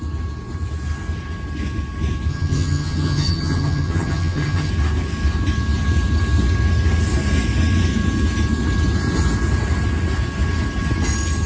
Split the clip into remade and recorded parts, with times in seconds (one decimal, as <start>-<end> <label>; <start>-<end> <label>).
0.0-2.3 recorded; 2.3-4.7 remade; 4.7-11.5 recorded